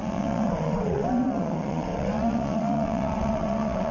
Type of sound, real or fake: fake